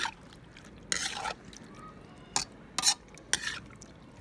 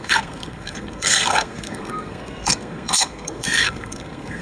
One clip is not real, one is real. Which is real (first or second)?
first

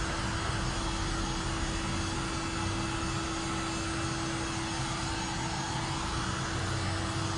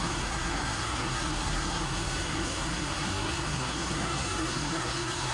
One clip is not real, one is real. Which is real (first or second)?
first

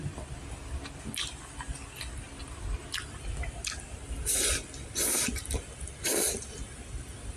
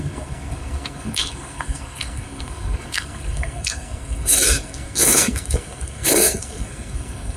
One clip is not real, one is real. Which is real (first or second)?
first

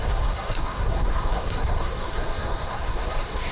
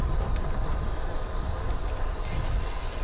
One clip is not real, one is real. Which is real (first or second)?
second